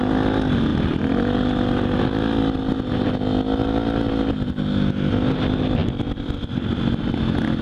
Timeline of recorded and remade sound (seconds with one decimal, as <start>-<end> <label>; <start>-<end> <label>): 0.0-7.6 recorded